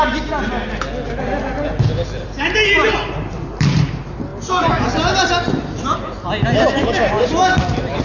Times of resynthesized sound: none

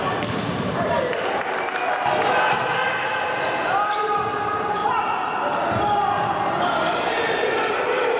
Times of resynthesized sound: none

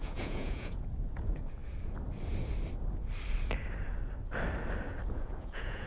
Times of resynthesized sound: 0.0-1.6; 5.1-5.9